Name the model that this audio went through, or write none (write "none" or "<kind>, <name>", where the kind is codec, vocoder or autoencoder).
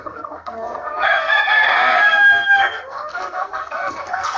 codec, SNAC